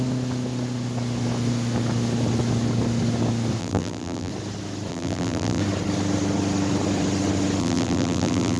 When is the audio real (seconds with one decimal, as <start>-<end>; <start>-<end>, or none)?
0.0-3.6; 4.3-4.9; 5.6-7.6